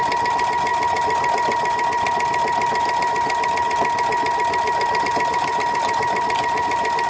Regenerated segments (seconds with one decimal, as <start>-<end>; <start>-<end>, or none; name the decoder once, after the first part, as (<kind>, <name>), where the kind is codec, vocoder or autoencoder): 0.0-0.7 (vocoder, BigVGAN v2); 5.0-7.1